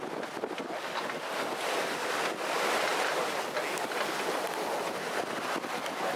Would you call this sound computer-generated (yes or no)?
no